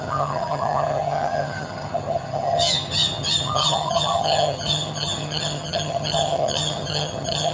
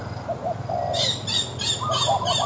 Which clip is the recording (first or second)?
second